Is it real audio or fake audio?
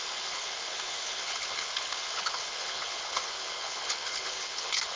fake